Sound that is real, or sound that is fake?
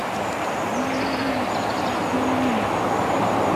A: real